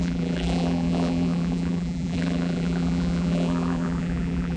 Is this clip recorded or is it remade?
remade